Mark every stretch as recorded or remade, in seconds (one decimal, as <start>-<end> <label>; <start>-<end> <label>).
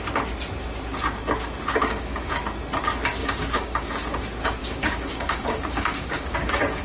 0.0-1.8 recorded; 1.8-2.3 remade; 2.3-3.2 recorded; 3.2-3.9 remade; 3.9-4.6 recorded; 4.6-6.8 remade